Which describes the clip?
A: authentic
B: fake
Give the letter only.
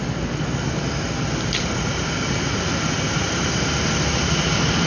A